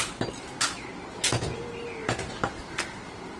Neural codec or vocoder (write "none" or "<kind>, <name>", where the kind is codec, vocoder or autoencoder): none